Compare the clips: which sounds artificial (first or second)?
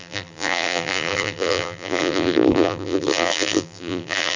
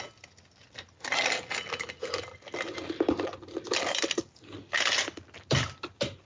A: first